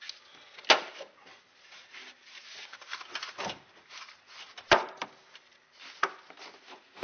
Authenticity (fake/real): real